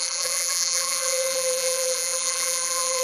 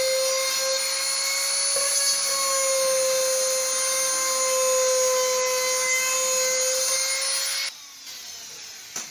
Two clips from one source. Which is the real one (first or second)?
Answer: second